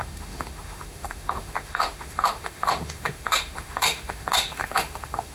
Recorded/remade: remade